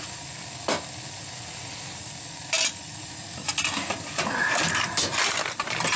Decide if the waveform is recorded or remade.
recorded